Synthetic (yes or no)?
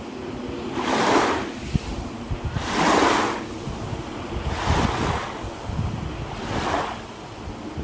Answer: no